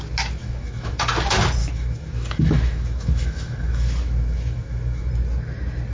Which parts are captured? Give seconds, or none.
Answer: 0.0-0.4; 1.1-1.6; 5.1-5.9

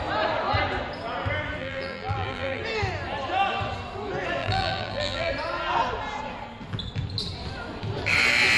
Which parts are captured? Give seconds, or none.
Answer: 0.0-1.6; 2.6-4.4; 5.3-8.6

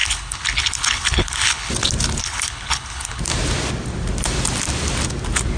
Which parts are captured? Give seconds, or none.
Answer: 1.7-2.2; 3.2-5.6